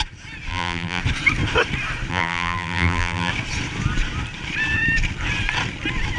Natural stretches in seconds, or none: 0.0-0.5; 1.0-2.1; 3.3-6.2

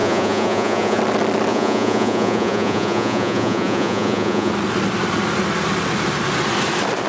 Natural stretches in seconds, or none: 1.0-1.5; 4.5-7.1

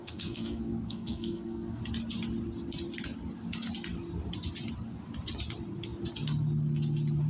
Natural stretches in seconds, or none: 1.8-7.3

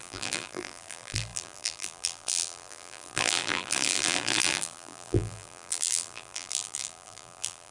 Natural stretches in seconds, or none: none

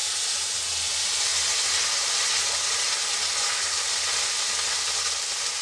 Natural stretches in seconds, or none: 0.0-5.6

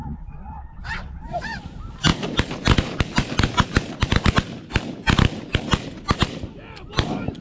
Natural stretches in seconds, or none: 1.6-7.4